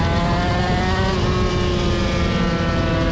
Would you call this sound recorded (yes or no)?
yes